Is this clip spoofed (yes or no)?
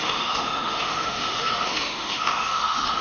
yes